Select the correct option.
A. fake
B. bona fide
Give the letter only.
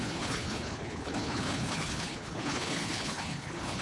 A